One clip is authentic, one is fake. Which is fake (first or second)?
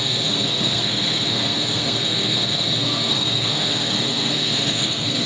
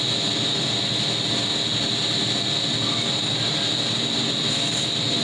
first